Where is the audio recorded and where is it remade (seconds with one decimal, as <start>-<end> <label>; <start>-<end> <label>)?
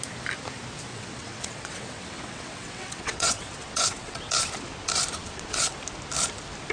0.0-0.9 recorded; 0.9-4.3 remade; 4.3-5.2 recorded; 5.2-5.7 remade; 5.7-6.7 recorded